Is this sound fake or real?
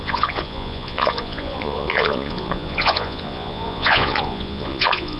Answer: fake